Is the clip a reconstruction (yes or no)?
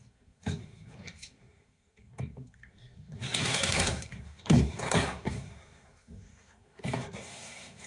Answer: yes